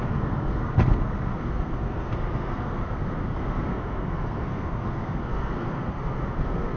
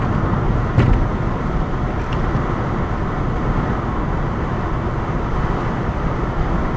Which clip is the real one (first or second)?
second